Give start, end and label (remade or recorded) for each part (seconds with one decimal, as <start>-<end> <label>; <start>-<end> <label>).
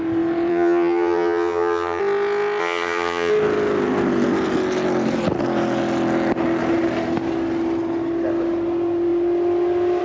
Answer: 0.0-0.5 recorded; 0.5-2.0 remade; 2.0-2.6 recorded; 2.6-3.3 remade; 3.3-10.0 recorded